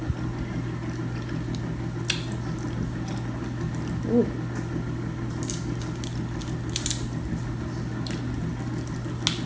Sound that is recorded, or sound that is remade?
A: recorded